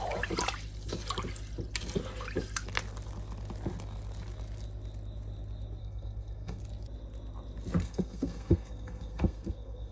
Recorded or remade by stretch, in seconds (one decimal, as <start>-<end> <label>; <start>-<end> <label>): 0.0-5.8 recorded; 5.8-6.6 remade; 6.6-7.8 recorded; 7.8-9.9 remade